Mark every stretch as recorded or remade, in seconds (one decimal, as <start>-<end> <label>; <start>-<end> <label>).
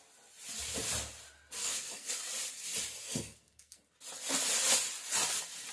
0.0-1.6 recorded; 1.6-2.2 remade; 2.2-3.0 recorded; 3.0-3.8 remade; 3.8-5.7 recorded